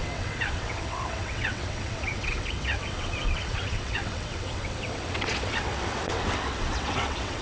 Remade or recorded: remade